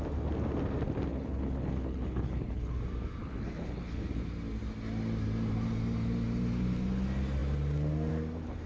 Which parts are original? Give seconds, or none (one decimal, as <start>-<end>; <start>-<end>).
0.0-1.1; 2.8-3.2; 4.1-8.7